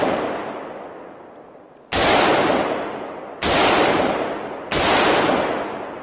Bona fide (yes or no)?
yes